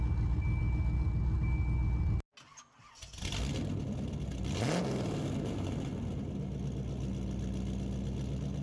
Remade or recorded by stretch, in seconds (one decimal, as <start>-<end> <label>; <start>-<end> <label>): 0.0-8.6 recorded